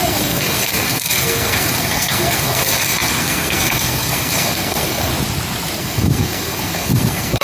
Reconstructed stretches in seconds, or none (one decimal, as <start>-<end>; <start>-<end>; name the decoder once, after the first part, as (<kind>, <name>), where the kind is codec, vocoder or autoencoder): 0.0-5.1 (codec, SNAC); 5.8-7.4